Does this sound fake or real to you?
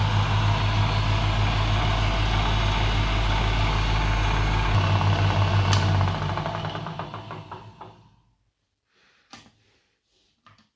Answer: real